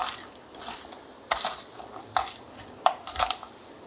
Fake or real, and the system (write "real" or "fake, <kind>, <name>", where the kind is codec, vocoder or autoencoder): real